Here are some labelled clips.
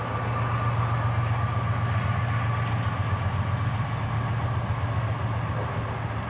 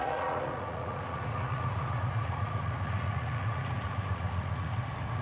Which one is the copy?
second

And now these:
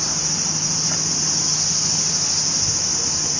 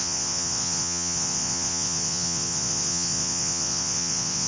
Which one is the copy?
second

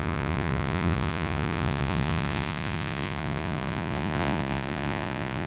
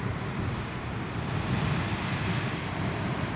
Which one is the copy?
first